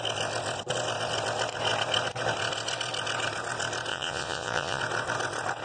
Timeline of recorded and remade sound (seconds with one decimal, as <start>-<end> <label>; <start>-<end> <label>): 0.0-3.9 recorded; 3.9-4.8 remade; 4.8-5.6 recorded